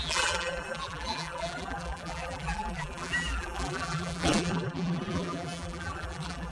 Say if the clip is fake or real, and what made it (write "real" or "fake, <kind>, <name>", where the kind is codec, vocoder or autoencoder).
fake, vocoder, BigVGAN v2